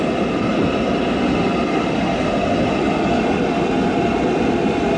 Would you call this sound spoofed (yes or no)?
no